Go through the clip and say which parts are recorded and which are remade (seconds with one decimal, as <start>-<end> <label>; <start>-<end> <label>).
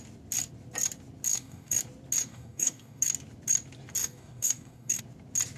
0.0-1.3 recorded; 1.3-1.8 remade; 1.8-2.2 recorded; 2.2-3.0 remade; 3.0-4.0 recorded; 4.0-5.0 remade; 5.0-5.6 recorded